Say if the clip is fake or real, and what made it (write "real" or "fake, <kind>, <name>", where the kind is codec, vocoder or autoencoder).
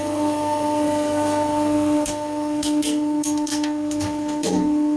fake, codec, SNAC